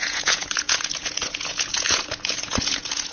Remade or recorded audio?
remade